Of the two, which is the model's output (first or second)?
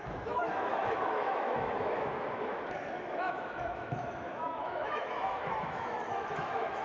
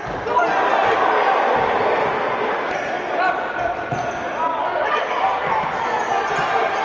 first